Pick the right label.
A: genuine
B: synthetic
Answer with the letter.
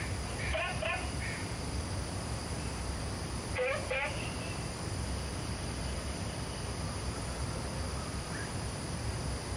B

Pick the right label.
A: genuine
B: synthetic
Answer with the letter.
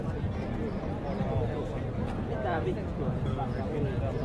A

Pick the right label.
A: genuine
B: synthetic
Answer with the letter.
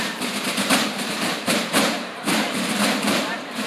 B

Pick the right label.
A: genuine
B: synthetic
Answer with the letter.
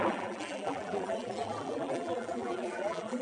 B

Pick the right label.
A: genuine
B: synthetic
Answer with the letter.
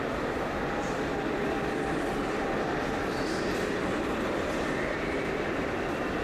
B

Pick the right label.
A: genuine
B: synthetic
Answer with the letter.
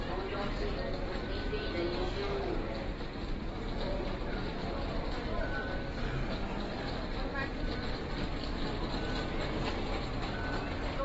A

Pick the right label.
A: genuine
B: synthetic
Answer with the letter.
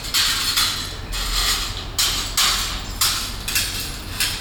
A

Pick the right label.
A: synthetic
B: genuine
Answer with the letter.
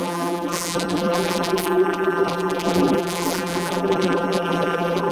A